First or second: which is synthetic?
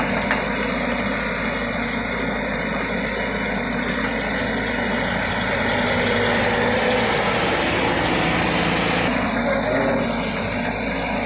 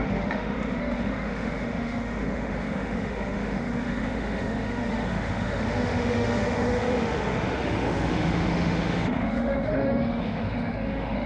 second